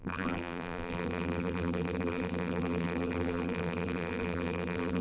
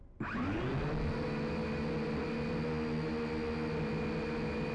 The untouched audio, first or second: second